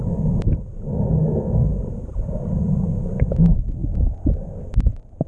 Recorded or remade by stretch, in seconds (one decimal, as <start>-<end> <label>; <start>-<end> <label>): 0.0-3.8 recorded; 3.8-4.5 remade; 4.5-5.3 recorded